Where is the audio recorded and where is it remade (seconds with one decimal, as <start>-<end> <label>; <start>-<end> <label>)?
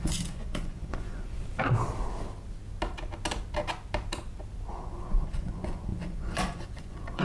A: 0.0-1.4 remade; 1.4-4.7 recorded; 4.7-7.2 remade